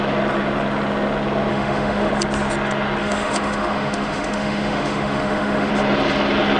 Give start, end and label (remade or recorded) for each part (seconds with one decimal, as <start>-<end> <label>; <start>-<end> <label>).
0.0-1.5 recorded; 1.5-2.1 remade; 2.1-3.0 recorded; 3.0-5.7 remade; 5.7-6.6 recorded